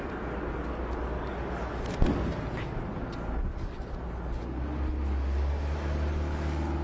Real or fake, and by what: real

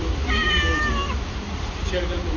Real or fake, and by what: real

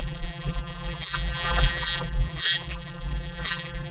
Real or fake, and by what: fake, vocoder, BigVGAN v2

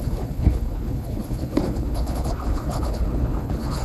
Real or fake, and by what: fake, codec, HILCodec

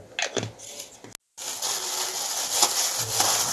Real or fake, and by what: real